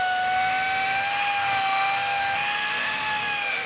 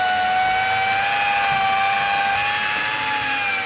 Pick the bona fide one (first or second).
second